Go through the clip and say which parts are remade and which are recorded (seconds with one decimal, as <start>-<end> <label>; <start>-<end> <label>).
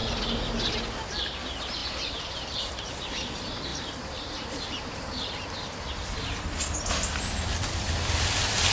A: 0.0-1.8 recorded; 1.8-2.7 remade; 2.7-3.7 recorded; 3.7-5.3 remade; 5.3-8.7 recorded